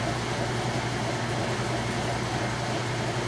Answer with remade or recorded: recorded